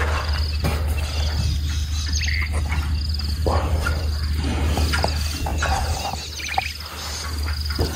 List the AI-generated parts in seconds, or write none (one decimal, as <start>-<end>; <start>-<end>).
3.4-4.0